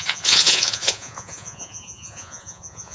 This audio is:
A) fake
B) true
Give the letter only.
A